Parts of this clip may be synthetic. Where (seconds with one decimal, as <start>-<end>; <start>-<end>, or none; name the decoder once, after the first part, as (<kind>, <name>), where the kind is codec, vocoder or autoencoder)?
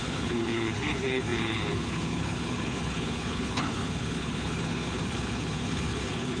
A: 0.0-6.4 (codec, HILCodec)